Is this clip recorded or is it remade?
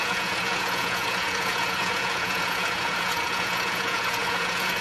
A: remade